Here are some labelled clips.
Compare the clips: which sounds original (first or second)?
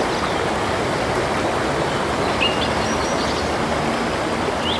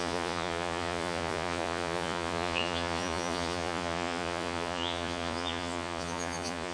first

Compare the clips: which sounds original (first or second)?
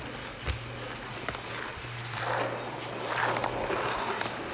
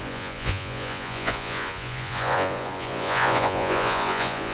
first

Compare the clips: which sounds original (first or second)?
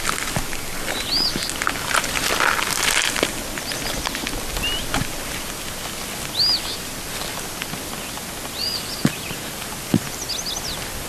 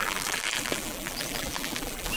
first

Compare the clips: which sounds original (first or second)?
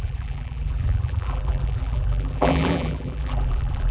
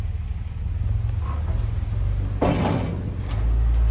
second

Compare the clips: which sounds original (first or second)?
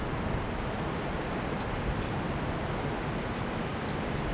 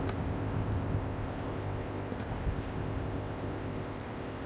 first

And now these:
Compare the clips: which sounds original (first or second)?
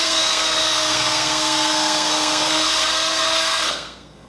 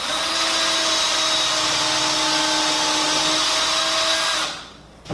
second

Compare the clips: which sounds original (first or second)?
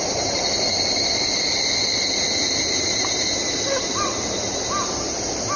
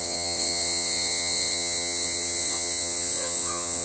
first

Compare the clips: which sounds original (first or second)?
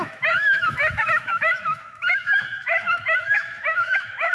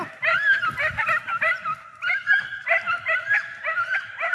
second